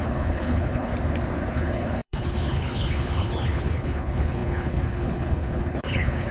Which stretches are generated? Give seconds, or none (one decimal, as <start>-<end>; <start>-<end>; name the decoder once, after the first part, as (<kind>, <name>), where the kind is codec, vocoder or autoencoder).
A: 0.0-0.9 (codec, HILCodec); 1.5-6.3

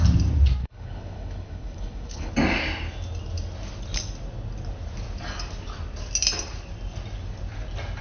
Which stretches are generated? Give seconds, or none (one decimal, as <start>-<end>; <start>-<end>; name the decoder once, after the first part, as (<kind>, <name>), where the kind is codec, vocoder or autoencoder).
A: 0.6-2.3 (codec, HILCodec)

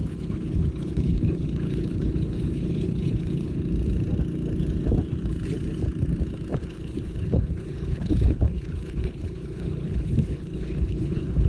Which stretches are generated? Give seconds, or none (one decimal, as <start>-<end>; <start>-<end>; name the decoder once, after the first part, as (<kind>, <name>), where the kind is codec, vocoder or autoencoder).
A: 0.0-3.6 (codec, HILCodec); 6.5-11.5